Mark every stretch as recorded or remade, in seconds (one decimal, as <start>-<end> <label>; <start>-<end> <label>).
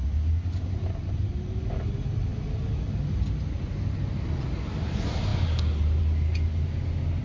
0.0-7.2 recorded